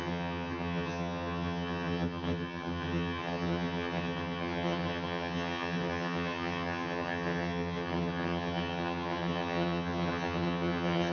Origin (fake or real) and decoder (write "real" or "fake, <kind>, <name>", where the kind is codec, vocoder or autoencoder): fake, vocoder, HiFi-GAN